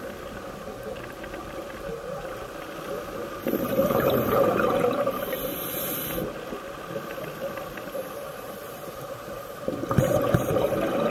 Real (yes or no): yes